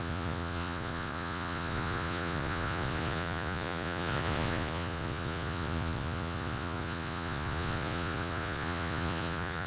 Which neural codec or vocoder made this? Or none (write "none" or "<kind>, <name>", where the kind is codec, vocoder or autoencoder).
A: vocoder, Vocos